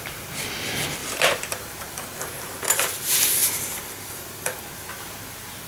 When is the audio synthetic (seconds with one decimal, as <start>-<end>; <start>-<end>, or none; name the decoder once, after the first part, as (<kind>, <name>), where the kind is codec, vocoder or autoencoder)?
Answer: 1.0-2.9 (vocoder, BigVGAN v2)